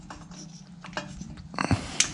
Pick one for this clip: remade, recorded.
recorded